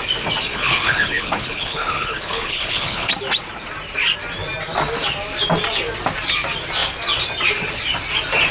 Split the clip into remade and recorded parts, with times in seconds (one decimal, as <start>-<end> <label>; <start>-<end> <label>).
0.0-0.5 recorded; 0.5-3.1 remade; 3.1-8.5 recorded